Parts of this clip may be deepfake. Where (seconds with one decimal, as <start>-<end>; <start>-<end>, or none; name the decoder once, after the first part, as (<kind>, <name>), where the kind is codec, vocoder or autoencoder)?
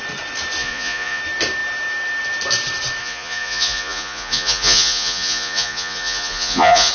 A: 0.6-1.2 (vocoder, Vocos); 3.0-6.9